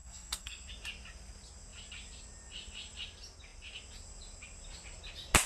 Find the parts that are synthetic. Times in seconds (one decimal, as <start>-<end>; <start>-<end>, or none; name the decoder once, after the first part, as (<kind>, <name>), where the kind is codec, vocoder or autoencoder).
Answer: 0.0-0.7 (codec, SNAC)